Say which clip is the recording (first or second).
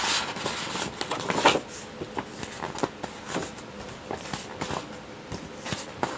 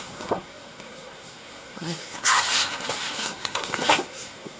first